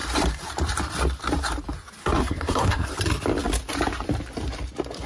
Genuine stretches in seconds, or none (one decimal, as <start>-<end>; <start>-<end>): 0.0-2.0; 2.9-5.1